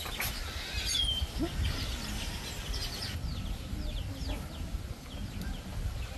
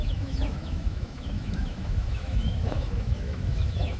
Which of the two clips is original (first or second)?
first